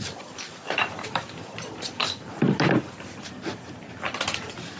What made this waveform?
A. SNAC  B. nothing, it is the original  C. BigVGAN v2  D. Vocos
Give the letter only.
B